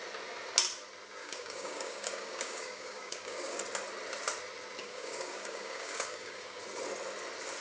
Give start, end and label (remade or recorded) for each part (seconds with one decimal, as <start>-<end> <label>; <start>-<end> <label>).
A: 0.0-1.2 recorded; 1.2-3.6 remade; 3.6-4.8 recorded; 4.8-6.6 remade; 6.6-7.6 recorded